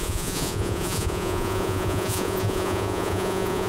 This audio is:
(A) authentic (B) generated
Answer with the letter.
B